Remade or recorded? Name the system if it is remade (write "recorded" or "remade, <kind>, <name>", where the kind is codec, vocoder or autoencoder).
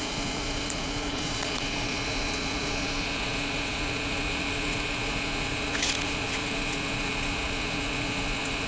remade, vocoder, Vocos